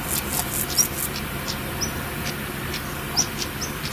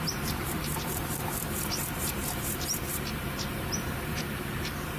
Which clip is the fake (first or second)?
second